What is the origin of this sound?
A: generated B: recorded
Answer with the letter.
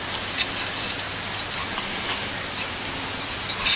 B